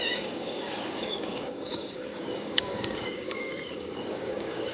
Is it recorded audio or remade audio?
remade